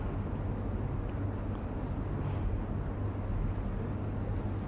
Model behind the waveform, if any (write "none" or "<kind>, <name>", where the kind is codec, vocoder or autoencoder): none